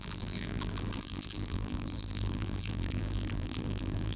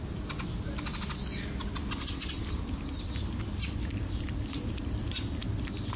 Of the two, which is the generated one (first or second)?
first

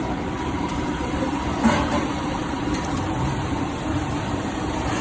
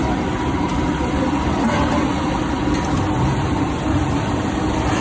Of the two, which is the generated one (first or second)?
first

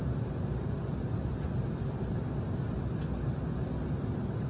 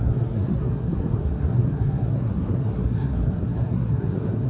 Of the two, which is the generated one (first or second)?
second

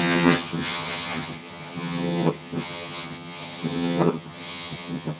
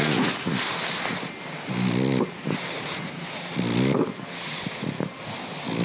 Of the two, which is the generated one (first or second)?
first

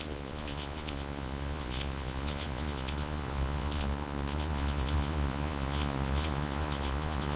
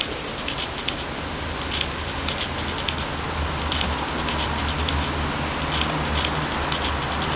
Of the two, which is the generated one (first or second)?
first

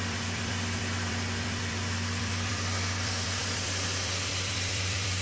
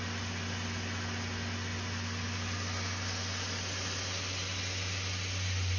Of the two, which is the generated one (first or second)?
first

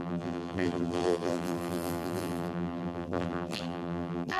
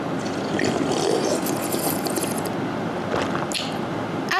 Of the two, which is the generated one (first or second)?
first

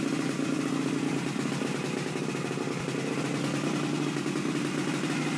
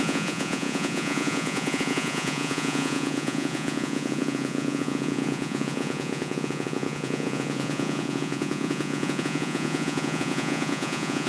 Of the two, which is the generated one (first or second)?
second